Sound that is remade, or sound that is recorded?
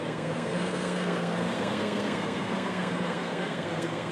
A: remade